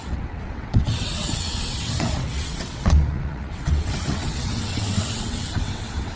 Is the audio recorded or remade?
remade